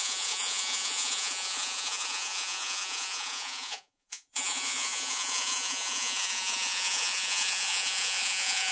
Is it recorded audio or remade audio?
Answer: remade